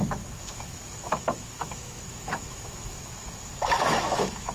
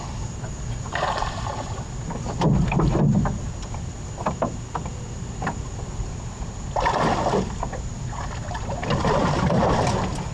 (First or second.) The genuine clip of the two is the second